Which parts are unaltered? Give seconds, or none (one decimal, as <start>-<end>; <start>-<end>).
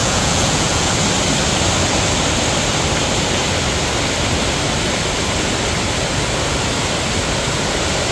0.9-8.1